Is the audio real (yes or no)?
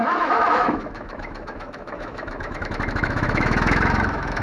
no